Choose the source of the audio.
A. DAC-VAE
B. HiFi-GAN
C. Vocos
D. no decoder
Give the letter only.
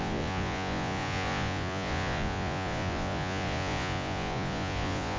C